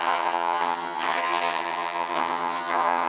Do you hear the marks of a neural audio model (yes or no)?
yes